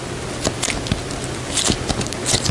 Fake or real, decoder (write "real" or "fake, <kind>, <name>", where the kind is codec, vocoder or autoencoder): real